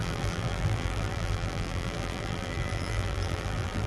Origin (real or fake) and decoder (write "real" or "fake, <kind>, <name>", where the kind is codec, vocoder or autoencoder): fake, vocoder, BigVGAN v2